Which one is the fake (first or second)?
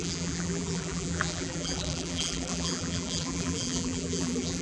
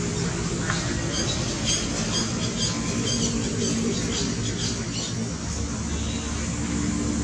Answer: first